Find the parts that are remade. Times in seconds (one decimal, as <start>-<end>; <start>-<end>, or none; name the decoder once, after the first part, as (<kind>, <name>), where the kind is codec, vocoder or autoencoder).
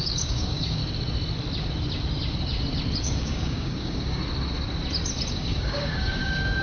0.0-0.8 (codec, DAC); 3.0-4.2; 5.3-6.6